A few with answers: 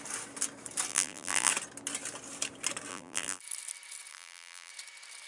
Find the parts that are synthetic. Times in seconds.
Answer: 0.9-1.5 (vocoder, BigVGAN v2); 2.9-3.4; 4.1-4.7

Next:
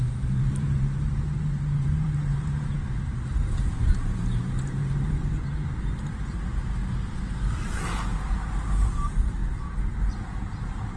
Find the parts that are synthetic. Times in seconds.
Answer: 0.0-6.8 (vocoder, BigVGAN v2); 7.5-11.0